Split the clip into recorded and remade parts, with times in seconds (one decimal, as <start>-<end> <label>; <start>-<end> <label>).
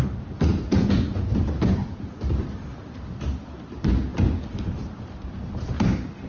0.0-0.5 recorded; 0.5-1.4 remade; 1.4-6.3 recorded